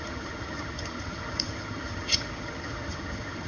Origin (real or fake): fake